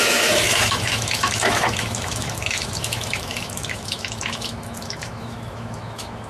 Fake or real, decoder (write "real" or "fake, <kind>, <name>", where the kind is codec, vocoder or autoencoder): fake, autoencoder, DAC-VAE